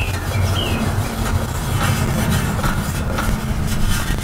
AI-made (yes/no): no